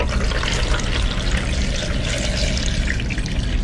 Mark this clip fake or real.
real